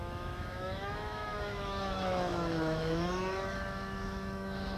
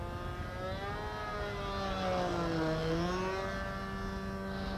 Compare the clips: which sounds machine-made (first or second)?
first